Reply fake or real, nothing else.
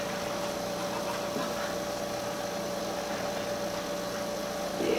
real